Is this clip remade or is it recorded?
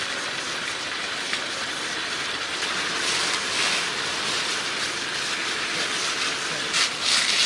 remade